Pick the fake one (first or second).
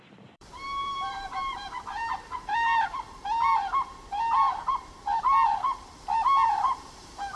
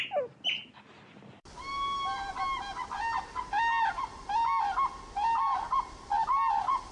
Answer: first